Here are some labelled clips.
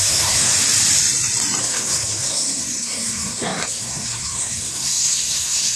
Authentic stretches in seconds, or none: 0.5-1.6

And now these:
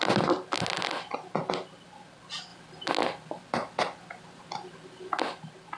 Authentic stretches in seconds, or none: 0.0-5.8

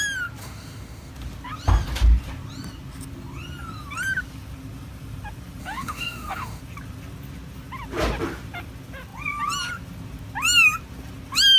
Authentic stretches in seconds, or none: 0.0-0.4; 1.1-5.6; 6.6-11.6

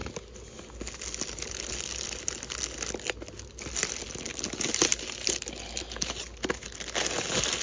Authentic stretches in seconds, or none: 0.0-7.6